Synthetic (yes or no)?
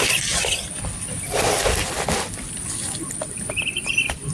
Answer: yes